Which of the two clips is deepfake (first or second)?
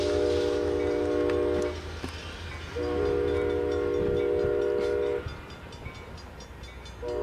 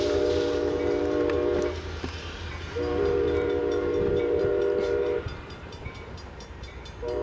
second